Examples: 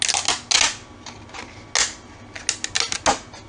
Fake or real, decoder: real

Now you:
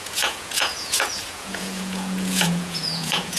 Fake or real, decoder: fake, vocoder, Vocos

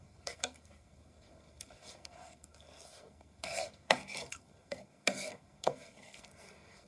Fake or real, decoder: fake, codec, SNAC